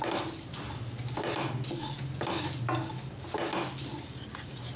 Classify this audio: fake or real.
real